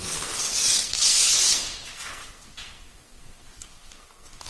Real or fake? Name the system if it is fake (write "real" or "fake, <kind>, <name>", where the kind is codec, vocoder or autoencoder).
fake, codec, SNAC